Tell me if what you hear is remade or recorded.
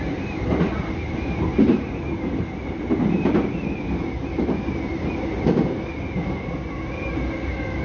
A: recorded